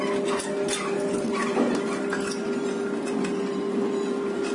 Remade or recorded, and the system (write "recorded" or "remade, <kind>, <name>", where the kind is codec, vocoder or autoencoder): recorded